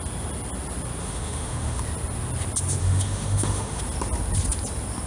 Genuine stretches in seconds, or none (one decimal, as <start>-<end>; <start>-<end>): 0.0-1.0; 1.8-2.8; 3.8-5.1